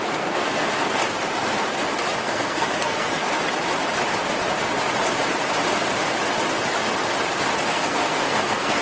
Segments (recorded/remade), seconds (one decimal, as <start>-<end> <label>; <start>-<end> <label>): 0.0-1.0 remade; 1.0-2.2 recorded; 2.2-3.2 remade; 3.2-7.7 recorded; 7.7-8.8 remade